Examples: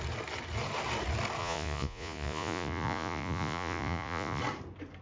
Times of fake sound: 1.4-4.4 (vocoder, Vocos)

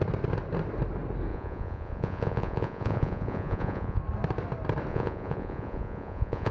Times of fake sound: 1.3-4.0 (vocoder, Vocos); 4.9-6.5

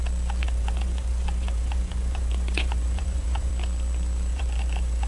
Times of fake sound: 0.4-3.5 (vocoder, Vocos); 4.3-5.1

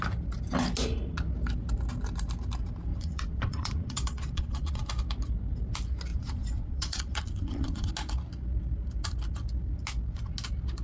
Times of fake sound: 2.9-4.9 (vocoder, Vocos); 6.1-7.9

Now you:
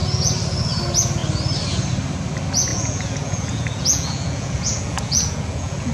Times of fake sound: 2.7-5.9 (vocoder, Vocos)

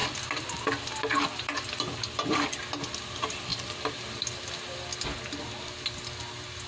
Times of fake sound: none